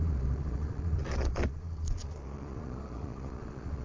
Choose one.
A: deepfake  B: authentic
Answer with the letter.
A